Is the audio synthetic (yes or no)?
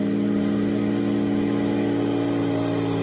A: no